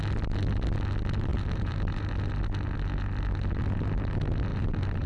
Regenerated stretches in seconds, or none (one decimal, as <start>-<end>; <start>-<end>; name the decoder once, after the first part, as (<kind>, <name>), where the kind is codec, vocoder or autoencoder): 1.3-2.1 (vocoder, BigVGAN v2); 4.5-5.1